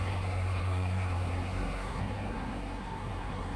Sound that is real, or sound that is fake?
fake